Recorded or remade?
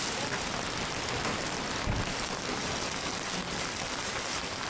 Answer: recorded